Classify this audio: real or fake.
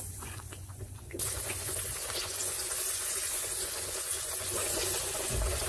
fake